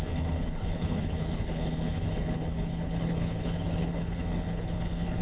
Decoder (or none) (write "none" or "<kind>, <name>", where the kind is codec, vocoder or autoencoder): codec, HILCodec